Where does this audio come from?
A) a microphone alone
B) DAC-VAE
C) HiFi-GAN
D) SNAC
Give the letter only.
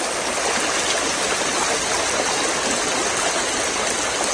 A